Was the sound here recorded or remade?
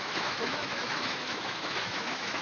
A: remade